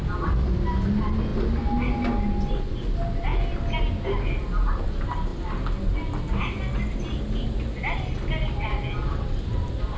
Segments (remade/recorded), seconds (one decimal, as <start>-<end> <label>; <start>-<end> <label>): 0.0-9.0 recorded; 9.0-10.0 remade